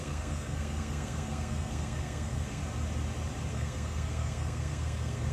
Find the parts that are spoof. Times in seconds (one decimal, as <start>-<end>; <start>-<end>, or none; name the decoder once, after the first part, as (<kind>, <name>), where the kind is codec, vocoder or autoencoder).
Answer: 0.0-2.6 (codec, SNAC); 3.5-5.3